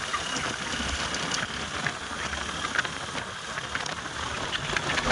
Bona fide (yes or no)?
yes